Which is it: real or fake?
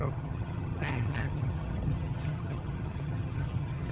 fake